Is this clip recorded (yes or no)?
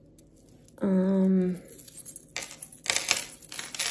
yes